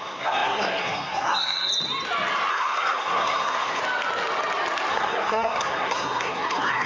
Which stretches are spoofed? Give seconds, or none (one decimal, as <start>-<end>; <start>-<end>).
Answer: 0.0-1.7; 2.5-3.8; 4.9-6.9